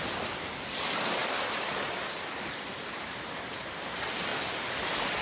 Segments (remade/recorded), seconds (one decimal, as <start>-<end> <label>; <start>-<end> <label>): 0.0-5.2 recorded